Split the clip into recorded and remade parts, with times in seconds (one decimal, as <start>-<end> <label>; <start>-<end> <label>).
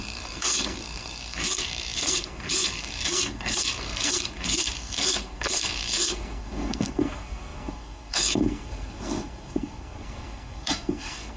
0.0-11.4 remade